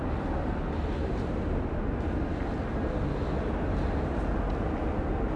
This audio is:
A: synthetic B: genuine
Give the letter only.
B